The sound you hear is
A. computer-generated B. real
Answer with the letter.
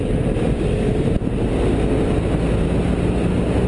B